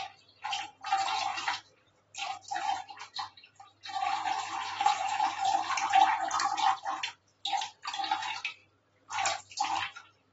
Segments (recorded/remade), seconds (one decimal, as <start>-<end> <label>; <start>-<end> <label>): 0.0-1.3 recorded; 1.3-5.7 remade; 5.7-10.3 recorded

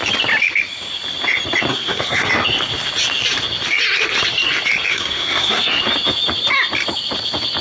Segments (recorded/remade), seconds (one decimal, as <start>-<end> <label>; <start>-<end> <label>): 0.0-1.7 recorded; 1.7-2.3 remade; 2.3-4.9 recorded; 4.9-5.8 remade; 5.8-7.6 recorded